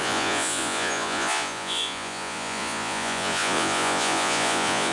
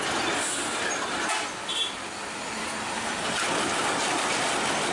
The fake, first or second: first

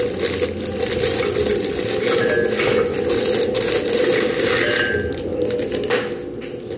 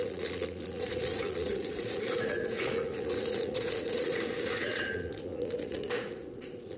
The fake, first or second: second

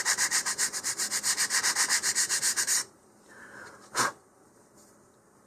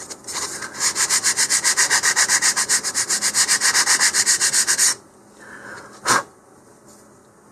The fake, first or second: first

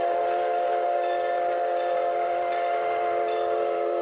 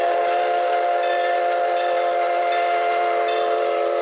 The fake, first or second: first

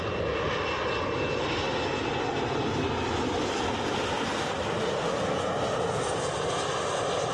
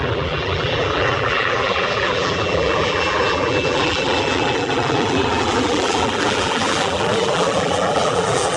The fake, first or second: second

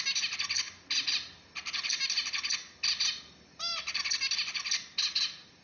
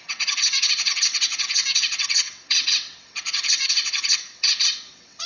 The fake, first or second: second